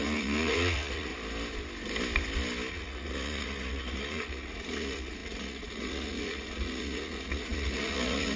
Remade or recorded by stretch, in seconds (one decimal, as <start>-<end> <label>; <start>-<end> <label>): 0.0-1.1 remade; 1.1-2.7 recorded; 2.7-8.4 remade